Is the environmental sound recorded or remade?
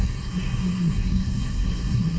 remade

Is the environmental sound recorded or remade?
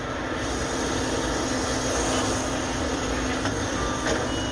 recorded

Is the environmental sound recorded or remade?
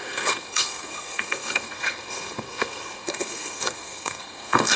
remade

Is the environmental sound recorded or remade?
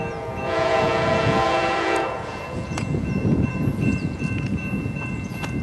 remade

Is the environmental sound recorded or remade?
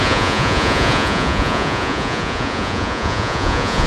remade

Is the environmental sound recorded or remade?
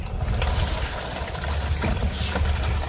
recorded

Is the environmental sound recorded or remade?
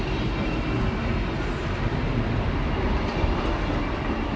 recorded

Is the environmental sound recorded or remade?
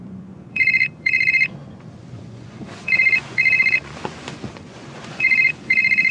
remade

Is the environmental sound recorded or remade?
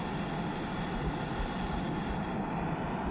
recorded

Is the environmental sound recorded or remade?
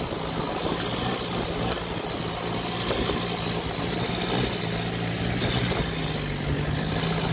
recorded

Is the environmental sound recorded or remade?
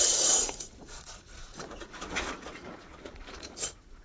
remade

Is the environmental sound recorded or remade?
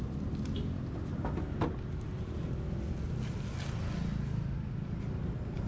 recorded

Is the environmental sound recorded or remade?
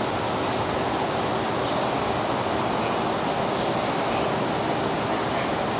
recorded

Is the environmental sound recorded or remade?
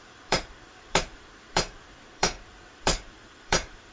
remade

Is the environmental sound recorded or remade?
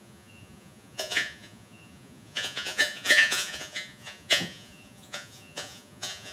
remade